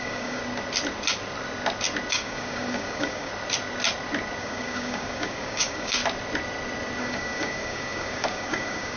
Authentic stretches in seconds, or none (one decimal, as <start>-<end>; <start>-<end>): 0.4-2.1; 3.3-4.4; 6.0-7.0